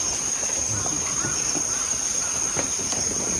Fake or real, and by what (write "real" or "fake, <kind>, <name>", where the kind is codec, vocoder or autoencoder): real